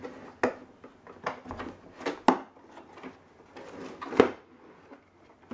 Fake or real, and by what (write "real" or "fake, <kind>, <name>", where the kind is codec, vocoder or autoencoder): real